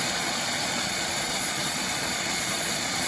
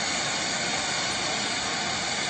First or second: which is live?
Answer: second